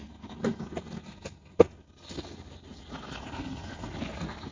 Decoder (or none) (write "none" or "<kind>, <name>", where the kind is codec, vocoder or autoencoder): none